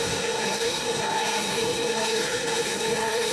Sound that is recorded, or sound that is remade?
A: remade